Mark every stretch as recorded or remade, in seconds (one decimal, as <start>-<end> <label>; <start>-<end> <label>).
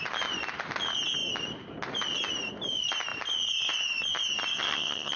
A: 0.0-4.5 recorded; 4.5-5.2 remade